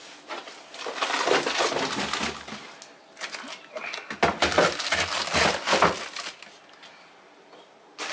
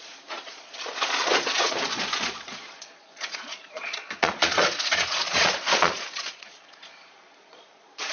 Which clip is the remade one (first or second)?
second